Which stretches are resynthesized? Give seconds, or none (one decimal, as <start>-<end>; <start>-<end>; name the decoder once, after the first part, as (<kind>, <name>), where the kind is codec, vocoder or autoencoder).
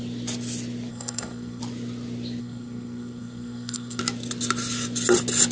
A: 0.9-1.6 (codec, SNAC); 2.4-4.0